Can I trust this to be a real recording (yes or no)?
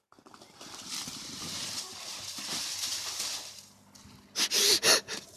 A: yes